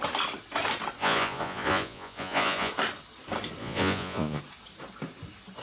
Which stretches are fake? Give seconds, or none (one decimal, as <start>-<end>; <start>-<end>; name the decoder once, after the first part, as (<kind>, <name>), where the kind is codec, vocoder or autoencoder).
1.0-2.7 (vocoder, Vocos); 3.6-4.4